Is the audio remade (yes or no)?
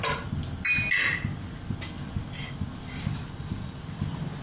no